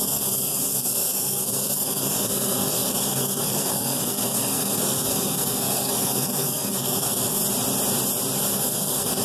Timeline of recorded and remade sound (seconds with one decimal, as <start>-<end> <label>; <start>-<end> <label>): 0.0-7.4 remade; 7.4-8.4 recorded; 8.4-9.2 remade